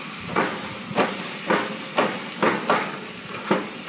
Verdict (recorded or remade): recorded